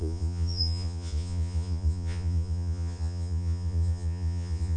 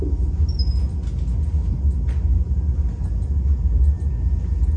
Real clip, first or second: second